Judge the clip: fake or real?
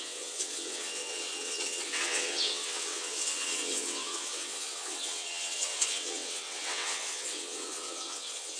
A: fake